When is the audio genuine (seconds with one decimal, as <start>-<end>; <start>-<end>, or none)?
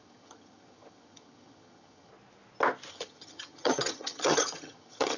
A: 2.1-2.9